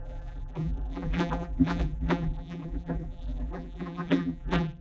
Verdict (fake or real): fake